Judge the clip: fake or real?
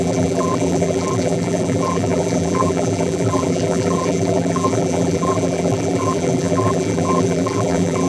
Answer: fake